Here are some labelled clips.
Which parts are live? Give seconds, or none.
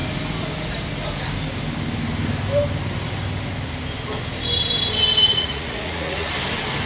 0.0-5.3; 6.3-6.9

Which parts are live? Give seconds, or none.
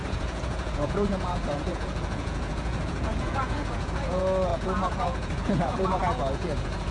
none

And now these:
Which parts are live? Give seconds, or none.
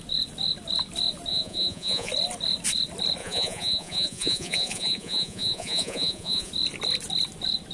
0.0-1.3; 2.1-3.2; 6.5-7.7